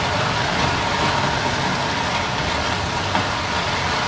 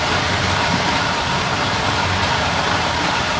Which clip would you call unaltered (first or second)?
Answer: first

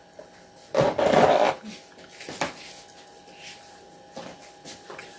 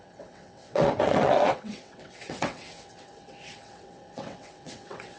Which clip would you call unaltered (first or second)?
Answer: first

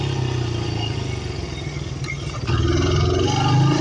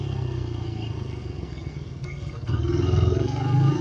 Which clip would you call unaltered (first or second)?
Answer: first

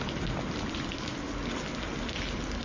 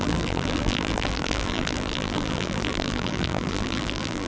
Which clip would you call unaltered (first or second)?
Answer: first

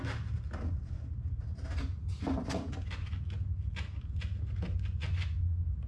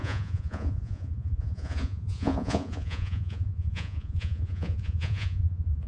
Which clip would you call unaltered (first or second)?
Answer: first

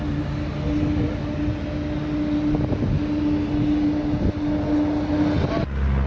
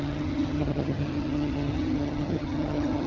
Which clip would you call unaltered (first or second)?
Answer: first